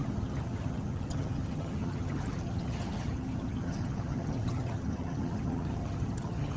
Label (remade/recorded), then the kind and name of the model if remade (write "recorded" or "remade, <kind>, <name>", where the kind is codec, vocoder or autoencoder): remade, vocoder, HiFi-GAN